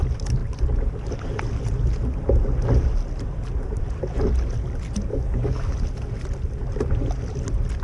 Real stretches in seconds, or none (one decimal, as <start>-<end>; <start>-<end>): 0.0-5.1; 5.7-7.8